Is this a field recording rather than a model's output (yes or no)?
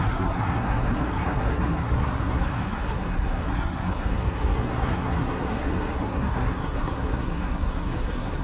no